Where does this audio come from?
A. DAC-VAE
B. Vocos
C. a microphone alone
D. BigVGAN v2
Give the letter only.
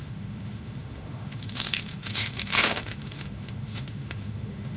A